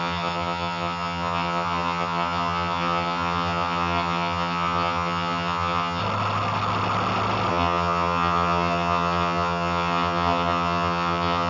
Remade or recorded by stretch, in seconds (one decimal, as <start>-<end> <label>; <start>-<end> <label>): 0.0-6.0 remade; 6.0-7.5 recorded; 7.5-11.5 remade